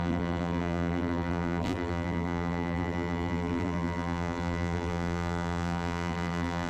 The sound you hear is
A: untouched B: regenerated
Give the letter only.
B